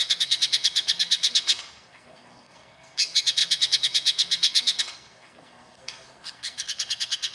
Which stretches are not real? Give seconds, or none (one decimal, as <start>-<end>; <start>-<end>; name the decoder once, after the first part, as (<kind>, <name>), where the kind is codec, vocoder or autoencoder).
0.0-7.3 (codec, SNAC)